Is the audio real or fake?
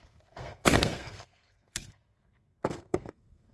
fake